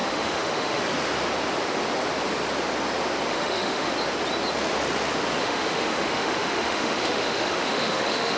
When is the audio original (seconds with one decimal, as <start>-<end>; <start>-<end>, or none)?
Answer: 0.8-3.3; 3.9-5.4